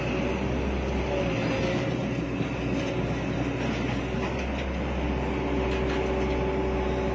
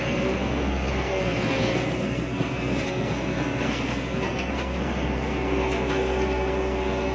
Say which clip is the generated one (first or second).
second